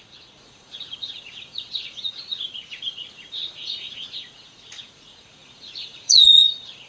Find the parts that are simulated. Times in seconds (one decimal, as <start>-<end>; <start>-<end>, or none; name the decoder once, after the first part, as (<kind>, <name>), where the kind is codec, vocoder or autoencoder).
0.0-6.9 (vocoder, Vocos)